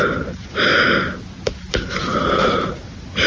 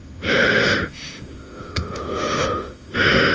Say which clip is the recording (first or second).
first